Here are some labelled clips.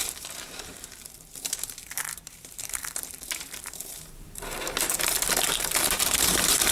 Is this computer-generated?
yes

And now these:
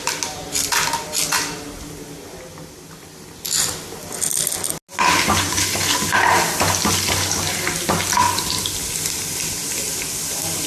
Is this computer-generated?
no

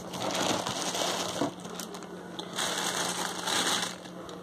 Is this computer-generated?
no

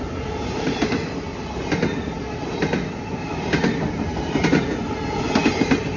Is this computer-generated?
no